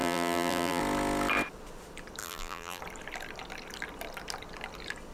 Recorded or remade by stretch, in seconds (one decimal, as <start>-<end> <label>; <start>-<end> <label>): 0.0-0.8 remade; 0.8-2.2 recorded; 2.2-2.8 remade; 2.8-5.1 recorded